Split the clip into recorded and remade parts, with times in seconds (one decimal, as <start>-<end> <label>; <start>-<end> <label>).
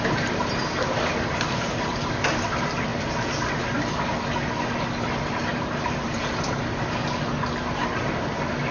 0.0-5.5 recorded; 5.5-6.2 remade; 6.2-8.7 recorded